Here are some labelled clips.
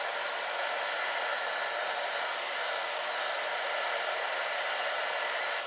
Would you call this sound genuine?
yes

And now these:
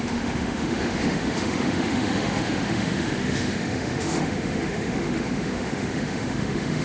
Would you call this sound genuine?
no